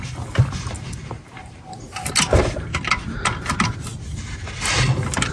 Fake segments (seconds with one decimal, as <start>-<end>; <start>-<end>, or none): none